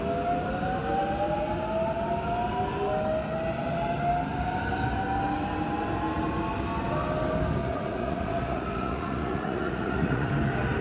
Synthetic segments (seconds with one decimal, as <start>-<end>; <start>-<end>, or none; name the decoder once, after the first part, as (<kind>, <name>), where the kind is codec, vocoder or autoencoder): 7.6-10.3 (vocoder, Vocos)

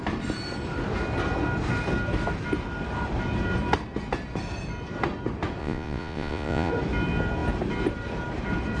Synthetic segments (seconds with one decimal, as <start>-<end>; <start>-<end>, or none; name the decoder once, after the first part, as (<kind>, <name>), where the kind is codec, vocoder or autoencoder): 5.6-6.7 (vocoder, Vocos)

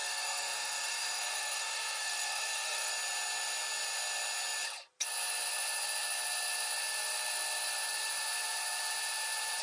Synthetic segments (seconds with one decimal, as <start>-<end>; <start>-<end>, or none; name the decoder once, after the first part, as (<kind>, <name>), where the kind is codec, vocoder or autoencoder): 0.0-2.9 (codec, SNAC)

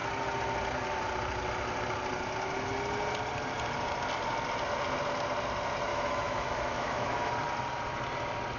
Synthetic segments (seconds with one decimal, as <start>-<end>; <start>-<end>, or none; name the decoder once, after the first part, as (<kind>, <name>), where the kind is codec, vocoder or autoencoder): 5.9-7.3 (autoencoder, DAC-VAE)

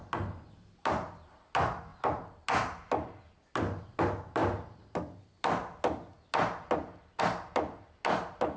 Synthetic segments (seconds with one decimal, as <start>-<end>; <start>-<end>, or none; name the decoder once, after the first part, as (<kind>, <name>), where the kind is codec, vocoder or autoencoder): none

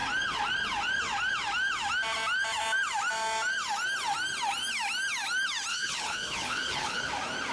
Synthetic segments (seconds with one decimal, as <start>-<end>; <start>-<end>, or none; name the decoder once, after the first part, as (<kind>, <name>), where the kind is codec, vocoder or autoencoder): 5.7-7.1 (codec, HILCodec)